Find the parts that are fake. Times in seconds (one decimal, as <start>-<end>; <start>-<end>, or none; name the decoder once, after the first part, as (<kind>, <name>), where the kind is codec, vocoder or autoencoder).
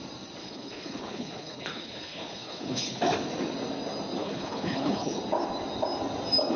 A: 0.4-3.0 (codec, HILCodec); 4.2-5.2